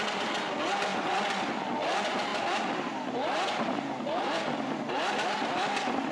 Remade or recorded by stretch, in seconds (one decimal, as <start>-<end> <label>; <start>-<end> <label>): 0.0-0.9 recorded; 0.9-1.4 remade; 1.4-2.3 recorded; 2.3-6.1 remade